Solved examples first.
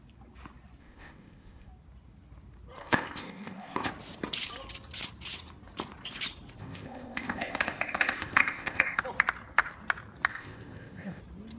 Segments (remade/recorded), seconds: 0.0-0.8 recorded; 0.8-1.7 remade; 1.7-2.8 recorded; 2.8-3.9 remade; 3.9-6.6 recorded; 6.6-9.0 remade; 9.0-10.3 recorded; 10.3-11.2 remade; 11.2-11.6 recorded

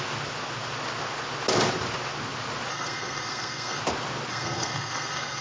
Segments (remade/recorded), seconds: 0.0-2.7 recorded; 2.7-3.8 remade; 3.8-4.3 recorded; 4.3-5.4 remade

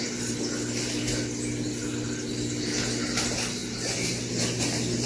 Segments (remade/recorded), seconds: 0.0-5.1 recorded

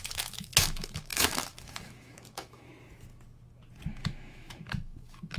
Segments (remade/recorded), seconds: 0.0-2.7 remade; 2.7-3.9 recorded; 3.9-5.4 remade

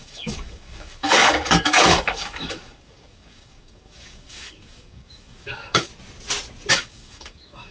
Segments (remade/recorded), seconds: 0.0-5.9 remade; 5.9-6.7 recorded; 6.7-7.7 remade

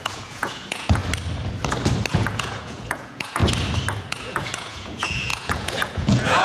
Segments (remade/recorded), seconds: 0.0-1.0 remade; 1.0-2.1 recorded; 2.1-3.4 remade; 3.4-4.1 recorded; 4.1-6.4 remade

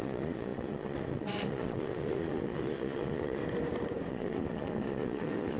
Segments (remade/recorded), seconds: 0.0-3.4 remade; 3.4-4.1 recorded; 4.1-5.6 remade